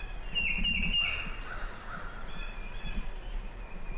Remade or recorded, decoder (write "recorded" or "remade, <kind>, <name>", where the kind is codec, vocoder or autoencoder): recorded